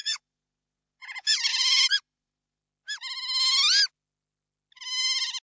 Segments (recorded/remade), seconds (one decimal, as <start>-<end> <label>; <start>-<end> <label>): 0.0-2.6 remade; 2.6-5.6 recorded